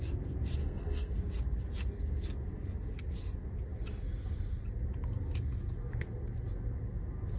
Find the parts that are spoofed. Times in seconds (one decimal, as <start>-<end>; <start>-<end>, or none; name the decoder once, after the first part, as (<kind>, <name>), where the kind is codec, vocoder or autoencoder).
0.6-1.1 (codec, SNAC)